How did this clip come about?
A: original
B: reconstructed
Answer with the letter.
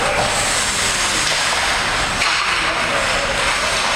A